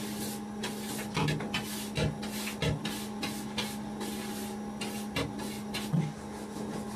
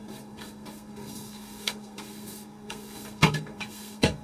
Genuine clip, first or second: first